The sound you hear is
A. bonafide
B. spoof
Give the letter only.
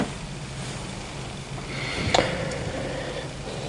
A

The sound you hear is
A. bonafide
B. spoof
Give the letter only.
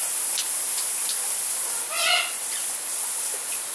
A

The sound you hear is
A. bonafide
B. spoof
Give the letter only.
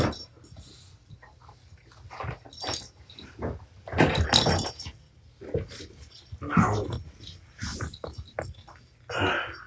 A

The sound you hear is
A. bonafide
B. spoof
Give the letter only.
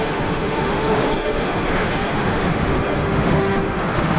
B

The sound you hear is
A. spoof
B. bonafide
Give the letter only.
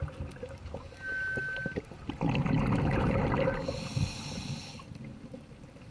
B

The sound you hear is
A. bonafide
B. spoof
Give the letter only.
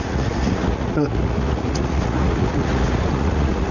B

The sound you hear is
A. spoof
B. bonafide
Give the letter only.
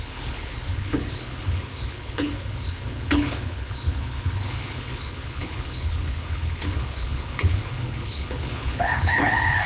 A